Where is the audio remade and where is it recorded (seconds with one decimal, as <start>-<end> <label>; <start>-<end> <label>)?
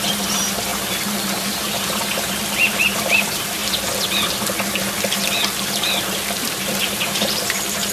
0.0-3.6 remade; 3.6-6.0 recorded; 6.0-7.9 remade